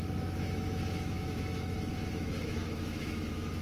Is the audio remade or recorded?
remade